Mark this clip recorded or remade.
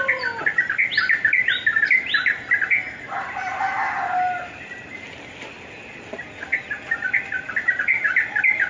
recorded